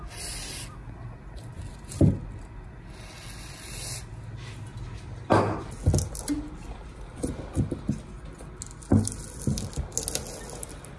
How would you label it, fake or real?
real